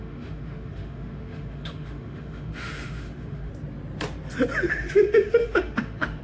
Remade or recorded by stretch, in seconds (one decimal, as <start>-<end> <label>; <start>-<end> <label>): 0.0-3.5 remade; 3.5-4.7 recorded; 4.7-6.2 remade